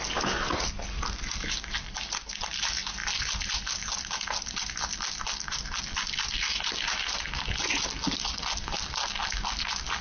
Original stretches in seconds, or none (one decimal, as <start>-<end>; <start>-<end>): 0.0-10.0